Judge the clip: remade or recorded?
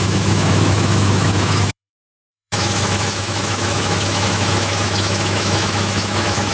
remade